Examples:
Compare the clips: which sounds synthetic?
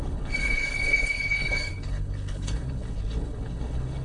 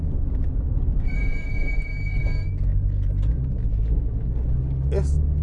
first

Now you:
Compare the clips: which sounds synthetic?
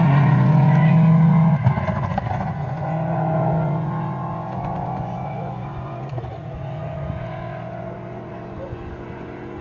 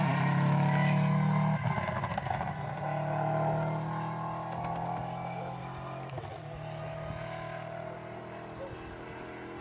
first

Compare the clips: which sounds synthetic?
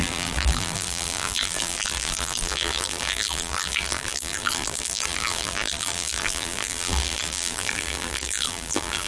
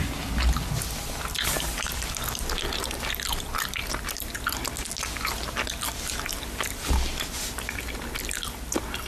first